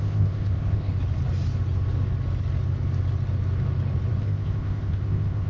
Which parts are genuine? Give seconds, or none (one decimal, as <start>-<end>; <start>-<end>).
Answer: 0.9-4.2